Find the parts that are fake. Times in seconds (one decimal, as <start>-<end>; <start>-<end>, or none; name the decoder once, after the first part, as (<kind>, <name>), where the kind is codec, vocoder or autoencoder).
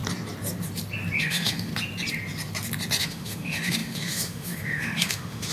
1.2-1.7 (autoencoder, DAC-VAE); 3.0-5.5